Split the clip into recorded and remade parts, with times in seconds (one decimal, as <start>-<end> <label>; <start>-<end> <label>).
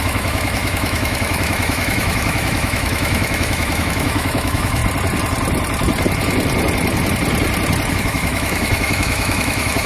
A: 0.0-4.8 remade; 4.8-7.9 recorded; 7.9-9.9 remade